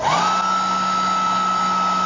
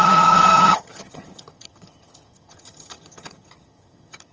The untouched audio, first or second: first